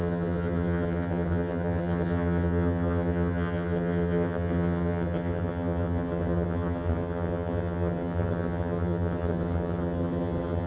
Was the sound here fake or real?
fake